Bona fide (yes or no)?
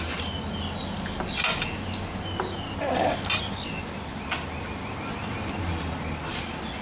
yes